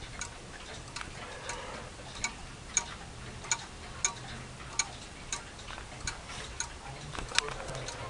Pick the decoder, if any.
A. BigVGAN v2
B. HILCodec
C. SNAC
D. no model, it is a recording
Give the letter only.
D